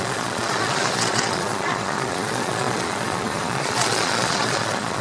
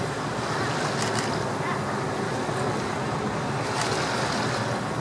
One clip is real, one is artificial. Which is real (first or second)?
second